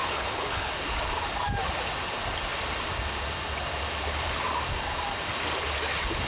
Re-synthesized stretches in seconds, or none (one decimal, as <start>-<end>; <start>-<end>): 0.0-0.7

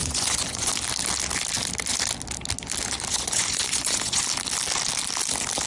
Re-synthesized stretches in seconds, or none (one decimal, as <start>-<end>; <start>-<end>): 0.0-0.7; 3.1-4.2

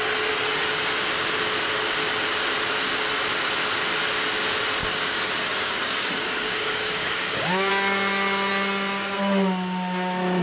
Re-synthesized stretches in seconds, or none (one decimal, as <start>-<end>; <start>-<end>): 4.8-7.7

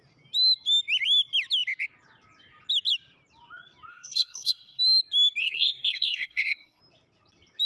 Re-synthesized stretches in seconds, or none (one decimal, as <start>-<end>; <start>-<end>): 3.9-4.8; 5.4-6.8